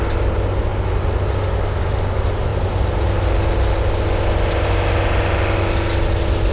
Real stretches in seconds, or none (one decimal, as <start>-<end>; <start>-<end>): 0.0-6.5